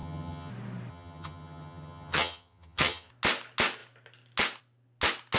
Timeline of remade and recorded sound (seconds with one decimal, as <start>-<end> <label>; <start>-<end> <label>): 0.0-0.5 remade; 0.5-0.9 recorded; 0.9-3.1 remade; 3.1-5.4 recorded